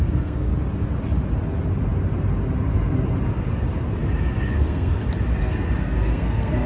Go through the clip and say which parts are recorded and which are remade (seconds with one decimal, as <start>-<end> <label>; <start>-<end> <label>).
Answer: 0.0-0.5 remade; 0.5-4.5 recorded; 4.5-5.0 remade; 5.0-5.8 recorded; 5.8-6.7 remade